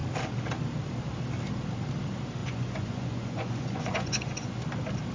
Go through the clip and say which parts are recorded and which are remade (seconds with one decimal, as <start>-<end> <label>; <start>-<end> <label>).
0.0-2.4 recorded; 2.4-4.5 remade; 4.5-5.1 recorded